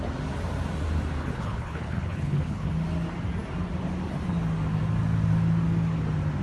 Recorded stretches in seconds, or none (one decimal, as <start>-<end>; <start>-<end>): 0.0-1.2; 2.7-6.4

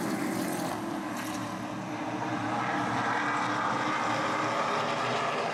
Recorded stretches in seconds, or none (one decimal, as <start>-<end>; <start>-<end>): 0.0-5.5

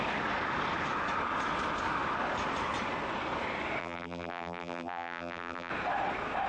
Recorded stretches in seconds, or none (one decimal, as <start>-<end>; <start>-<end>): 0.0-3.8; 5.7-6.5

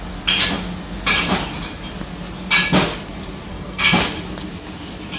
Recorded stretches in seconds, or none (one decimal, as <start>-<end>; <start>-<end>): 0.0-3.5; 4.0-5.2

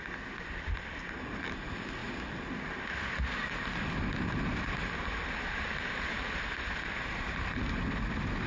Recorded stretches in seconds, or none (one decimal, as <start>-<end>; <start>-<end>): 0.0-8.5

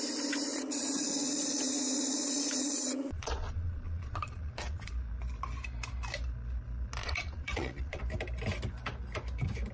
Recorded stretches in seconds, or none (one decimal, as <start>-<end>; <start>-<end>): 0.0-0.5; 4.9-7.0; 8.0-9.7